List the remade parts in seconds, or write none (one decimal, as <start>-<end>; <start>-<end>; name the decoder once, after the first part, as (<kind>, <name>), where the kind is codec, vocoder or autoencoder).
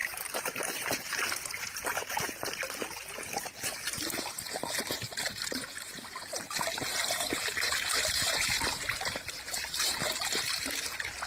0.0-1.2 (vocoder, BigVGAN v2); 7.0-10.1